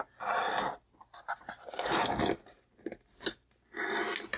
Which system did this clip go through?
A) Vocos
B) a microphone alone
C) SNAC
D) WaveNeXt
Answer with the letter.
B